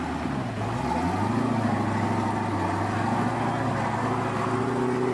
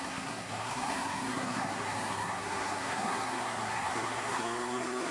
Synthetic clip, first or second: second